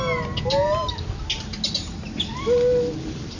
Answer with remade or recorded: recorded